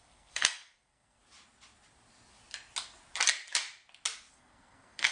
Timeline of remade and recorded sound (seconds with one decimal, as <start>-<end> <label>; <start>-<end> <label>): 0.0-1.2 remade; 1.2-4.3 recorded; 4.3-5.1 remade